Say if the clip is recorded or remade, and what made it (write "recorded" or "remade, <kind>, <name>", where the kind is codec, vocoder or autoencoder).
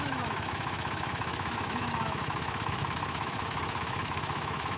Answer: remade, autoencoder, DAC-VAE